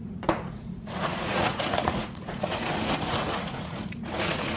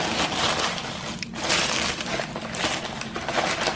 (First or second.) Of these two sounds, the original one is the second